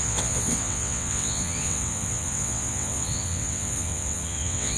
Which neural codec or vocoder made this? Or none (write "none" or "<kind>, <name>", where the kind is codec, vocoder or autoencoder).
vocoder, WaveNeXt